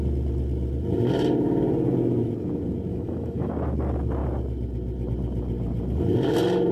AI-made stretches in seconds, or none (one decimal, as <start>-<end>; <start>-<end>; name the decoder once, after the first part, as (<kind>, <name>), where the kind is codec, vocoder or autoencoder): 2.9-3.5 (autoencoder, DAC-VAE)